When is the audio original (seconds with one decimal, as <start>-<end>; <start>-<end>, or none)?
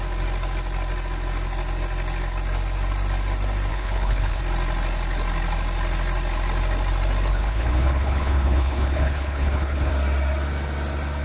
0.0-3.7; 4.4-7.3; 9.9-11.2